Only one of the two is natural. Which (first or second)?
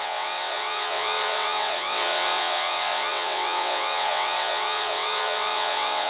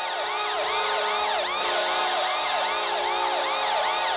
second